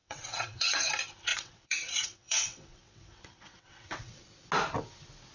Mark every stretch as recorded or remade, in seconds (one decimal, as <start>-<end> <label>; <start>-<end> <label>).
0.0-0.9 remade; 0.9-1.3 recorded; 1.3-4.2 remade; 4.2-5.3 recorded